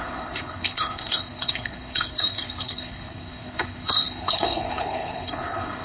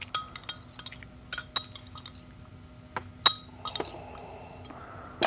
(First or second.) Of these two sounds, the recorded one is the second